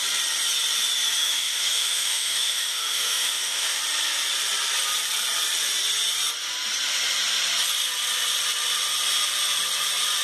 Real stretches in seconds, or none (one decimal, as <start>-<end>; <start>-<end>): 0.0-1.2; 3.8-10.2